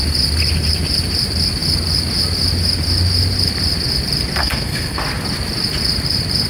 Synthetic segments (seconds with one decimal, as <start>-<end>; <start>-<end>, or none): 4.4-5.0